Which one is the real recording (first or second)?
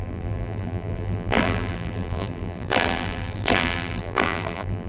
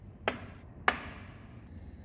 second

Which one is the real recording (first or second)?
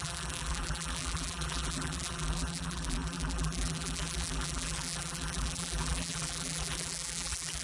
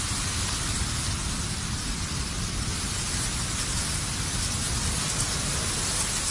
second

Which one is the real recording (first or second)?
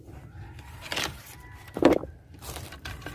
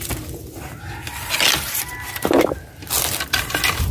second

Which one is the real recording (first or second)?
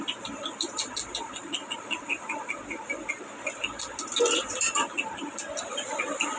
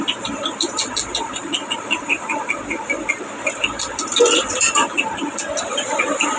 first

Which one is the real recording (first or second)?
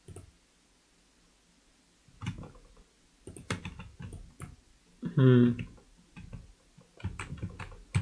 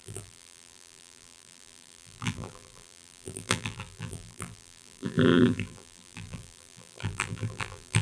first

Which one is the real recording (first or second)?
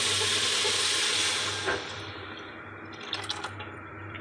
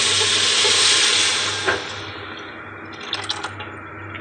second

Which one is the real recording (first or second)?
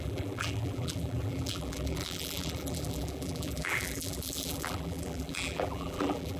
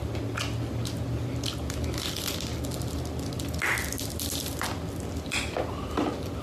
second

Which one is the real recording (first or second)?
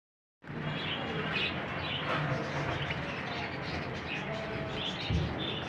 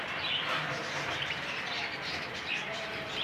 first